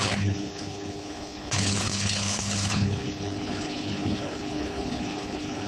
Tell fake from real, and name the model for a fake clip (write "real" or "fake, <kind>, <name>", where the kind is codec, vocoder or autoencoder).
fake, codec, HILCodec